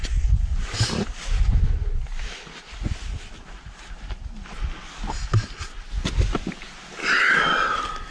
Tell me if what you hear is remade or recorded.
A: recorded